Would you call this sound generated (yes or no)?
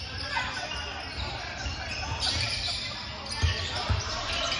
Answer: no